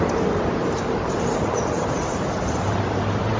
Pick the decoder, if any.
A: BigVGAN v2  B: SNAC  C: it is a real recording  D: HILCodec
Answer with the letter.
A